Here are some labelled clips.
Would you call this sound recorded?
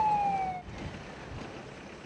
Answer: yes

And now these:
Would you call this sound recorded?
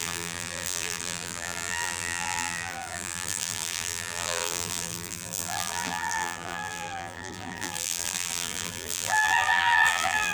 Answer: no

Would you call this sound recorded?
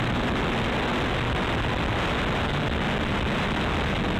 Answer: yes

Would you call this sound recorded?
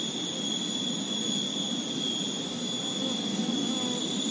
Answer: yes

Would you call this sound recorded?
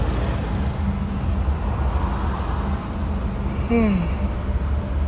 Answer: yes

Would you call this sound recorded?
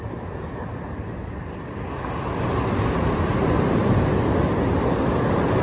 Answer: yes